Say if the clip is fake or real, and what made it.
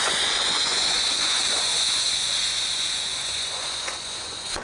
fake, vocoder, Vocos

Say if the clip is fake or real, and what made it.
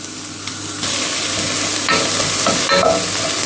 real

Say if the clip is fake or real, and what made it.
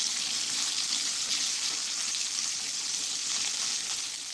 real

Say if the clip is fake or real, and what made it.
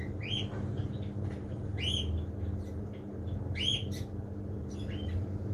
real